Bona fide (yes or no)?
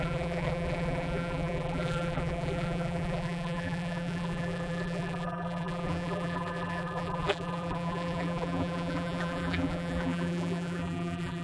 no